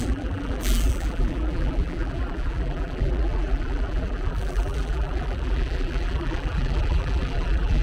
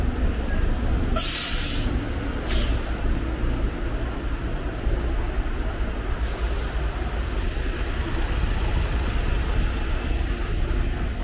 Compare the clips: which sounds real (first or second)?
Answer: second